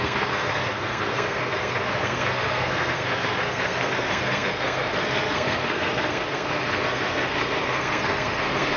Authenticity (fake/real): fake